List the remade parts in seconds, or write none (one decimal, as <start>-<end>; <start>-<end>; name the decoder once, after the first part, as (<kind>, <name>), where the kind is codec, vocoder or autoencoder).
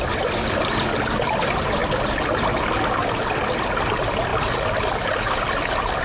none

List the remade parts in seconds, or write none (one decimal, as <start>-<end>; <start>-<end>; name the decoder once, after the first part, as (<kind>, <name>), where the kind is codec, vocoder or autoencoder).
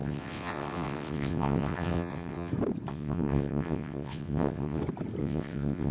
0.0-2.5 (vocoder, WaveNeXt); 2.9-4.8; 5.2-5.9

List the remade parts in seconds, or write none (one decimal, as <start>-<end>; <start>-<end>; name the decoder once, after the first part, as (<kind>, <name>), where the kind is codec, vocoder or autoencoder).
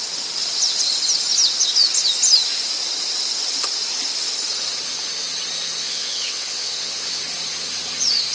5.8-7.2 (vocoder, WaveNeXt)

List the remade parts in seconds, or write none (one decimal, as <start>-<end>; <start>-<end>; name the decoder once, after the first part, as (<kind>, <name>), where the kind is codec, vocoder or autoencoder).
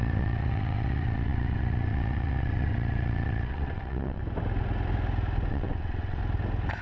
0.0-4.2 (vocoder, WaveNeXt); 5.5-6.2